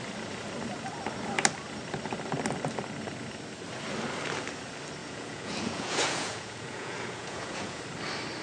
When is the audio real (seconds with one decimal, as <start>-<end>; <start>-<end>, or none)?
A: 0.0-5.0; 7.8-8.4